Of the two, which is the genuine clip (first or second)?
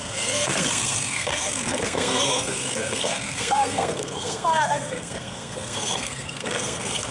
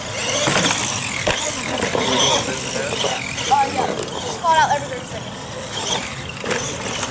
second